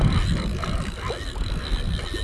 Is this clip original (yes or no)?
yes